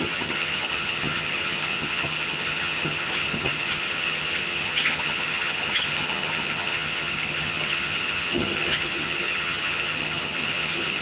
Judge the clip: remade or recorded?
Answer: remade